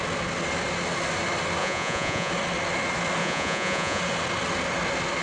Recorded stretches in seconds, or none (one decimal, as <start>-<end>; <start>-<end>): 0.0-1.6; 2.3-3.2; 4.0-5.2